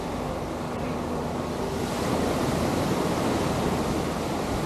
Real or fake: real